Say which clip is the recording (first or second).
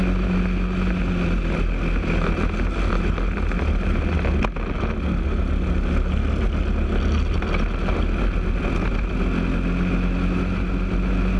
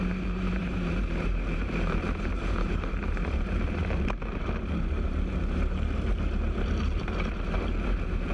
first